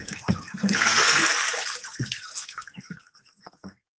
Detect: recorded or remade remade